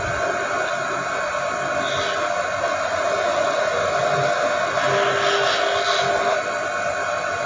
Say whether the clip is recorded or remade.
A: recorded